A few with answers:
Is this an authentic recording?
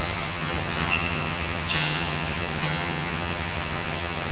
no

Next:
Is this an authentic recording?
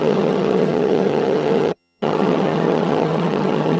no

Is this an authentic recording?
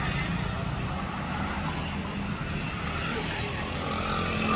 yes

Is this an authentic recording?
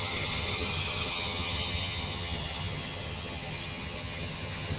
no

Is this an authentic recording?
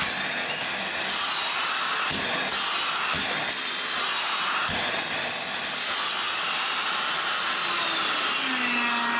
yes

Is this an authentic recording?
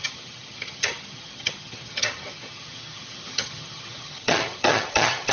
no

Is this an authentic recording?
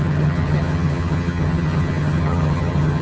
no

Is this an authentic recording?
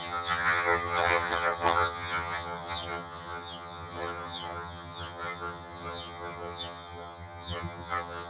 no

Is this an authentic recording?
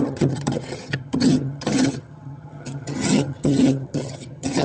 no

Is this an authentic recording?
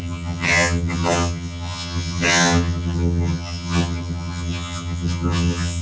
no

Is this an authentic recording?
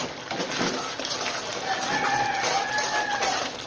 yes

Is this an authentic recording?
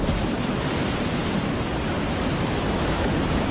yes